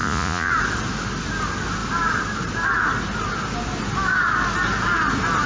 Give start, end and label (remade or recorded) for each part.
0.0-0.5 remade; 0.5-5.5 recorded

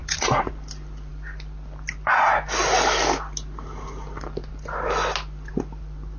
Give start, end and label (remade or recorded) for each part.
0.0-0.5 remade; 0.5-6.2 recorded